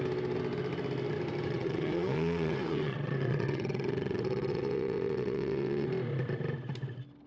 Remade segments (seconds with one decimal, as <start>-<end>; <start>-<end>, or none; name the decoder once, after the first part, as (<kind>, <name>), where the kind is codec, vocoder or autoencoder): 1.5-5.9 (vocoder, WaveNeXt)